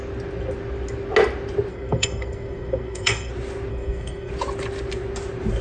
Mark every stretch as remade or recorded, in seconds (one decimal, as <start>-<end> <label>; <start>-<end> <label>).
0.0-1.7 recorded; 1.7-3.3 remade; 3.3-3.7 recorded; 3.7-4.3 remade; 4.3-5.6 recorded